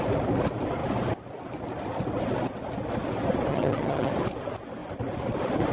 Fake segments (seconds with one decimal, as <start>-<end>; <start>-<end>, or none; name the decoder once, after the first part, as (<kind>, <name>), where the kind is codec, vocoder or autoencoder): 3.5-4.1 (vocoder, HiFi-GAN)